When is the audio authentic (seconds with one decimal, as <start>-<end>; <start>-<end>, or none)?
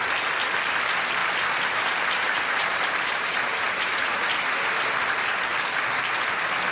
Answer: 0.0-1.2; 4.9-6.7